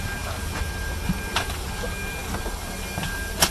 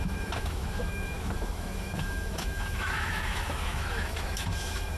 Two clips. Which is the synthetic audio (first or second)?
second